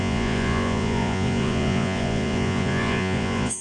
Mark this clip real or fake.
fake